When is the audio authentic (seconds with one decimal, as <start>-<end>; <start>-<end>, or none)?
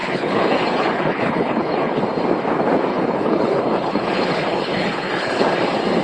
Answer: 2.0-2.9; 5.5-6.0